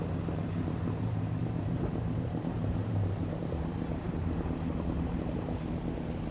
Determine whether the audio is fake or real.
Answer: fake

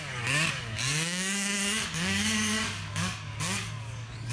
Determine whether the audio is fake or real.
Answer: fake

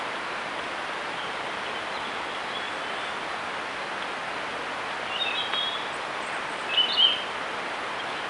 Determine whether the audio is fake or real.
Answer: real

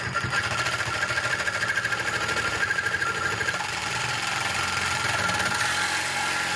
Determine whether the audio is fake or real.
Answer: real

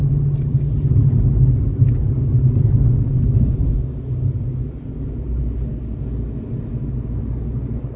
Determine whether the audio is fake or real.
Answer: real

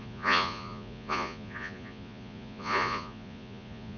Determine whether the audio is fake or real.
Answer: fake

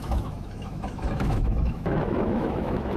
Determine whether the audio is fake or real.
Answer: fake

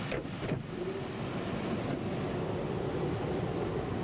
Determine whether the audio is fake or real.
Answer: real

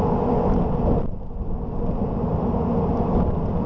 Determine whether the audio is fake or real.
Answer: real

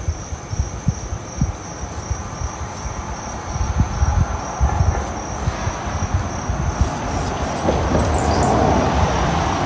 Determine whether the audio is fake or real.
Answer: real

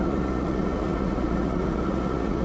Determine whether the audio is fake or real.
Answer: fake